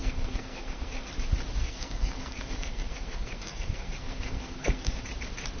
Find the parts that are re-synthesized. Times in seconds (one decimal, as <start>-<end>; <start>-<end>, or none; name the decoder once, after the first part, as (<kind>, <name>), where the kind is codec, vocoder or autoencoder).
0.0-1.1 (codec, SNAC); 1.6-5.0